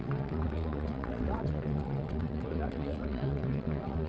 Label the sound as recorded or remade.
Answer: remade